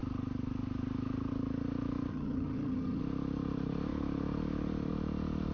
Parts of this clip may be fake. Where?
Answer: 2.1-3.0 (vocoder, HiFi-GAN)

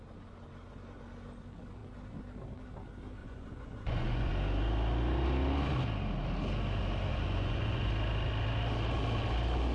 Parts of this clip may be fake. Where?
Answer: 3.2-4.3 (vocoder, Vocos); 7.1-7.9

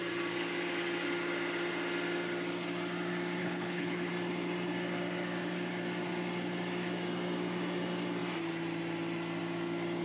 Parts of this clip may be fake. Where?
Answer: 3.4-4.1 (codec, HILCodec)

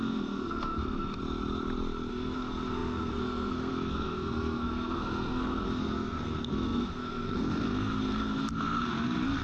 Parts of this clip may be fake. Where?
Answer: 0.0-1.2 (codec, SNAC); 2.1-9.4

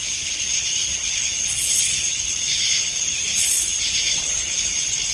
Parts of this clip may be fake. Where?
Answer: 0.0-5.1 (codec, HILCodec)

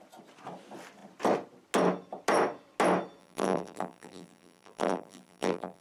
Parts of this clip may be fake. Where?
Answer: 3.2-5.8 (vocoder, BigVGAN v2)

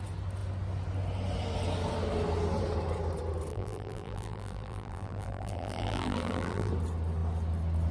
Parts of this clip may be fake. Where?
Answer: 3.5-6.7 (vocoder, BigVGAN v2)

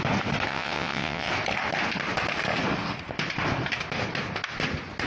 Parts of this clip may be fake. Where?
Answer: 0.5-1.3 (vocoder, WaveNeXt)